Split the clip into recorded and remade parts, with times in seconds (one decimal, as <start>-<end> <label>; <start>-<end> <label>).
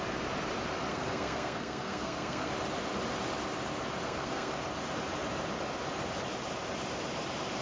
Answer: 0.0-0.9 recorded; 0.9-2.5 remade; 2.5-4.0 recorded; 4.0-4.5 remade; 4.5-7.6 recorded